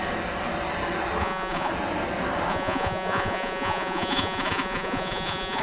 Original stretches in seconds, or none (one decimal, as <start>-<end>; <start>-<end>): 0.0-1.2; 1.7-2.5